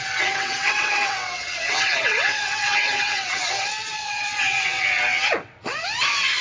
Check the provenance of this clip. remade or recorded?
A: remade